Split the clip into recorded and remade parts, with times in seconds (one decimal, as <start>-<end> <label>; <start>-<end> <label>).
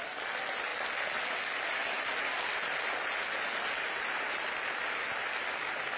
0.0-6.0 recorded